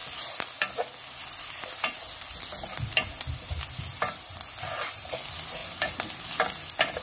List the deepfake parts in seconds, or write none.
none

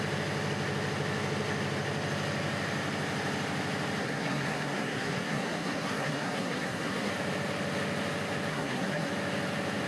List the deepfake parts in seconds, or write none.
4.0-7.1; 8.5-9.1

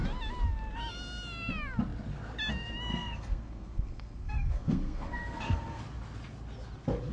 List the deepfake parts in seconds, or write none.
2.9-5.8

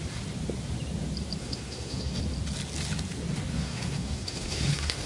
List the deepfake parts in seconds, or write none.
1.4-2.2; 3.5-5.1

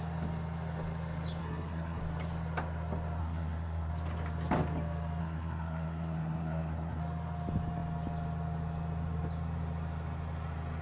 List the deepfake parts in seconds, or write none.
1.4-2.0; 3.2-3.9; 5.2-7.0

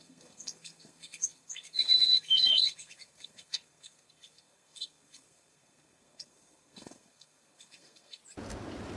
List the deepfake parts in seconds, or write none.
0.0-8.2